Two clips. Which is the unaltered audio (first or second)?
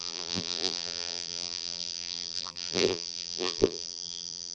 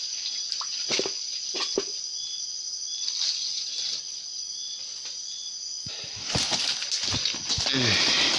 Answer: second